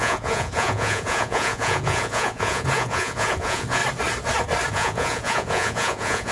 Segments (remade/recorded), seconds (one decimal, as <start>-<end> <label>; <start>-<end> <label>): 0.0-3.8 remade; 3.8-4.7 recorded; 4.7-6.3 remade